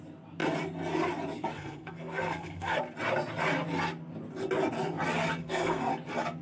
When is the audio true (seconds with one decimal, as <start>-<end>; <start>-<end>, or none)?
0.0-1.5; 2.8-5.4; 5.9-6.4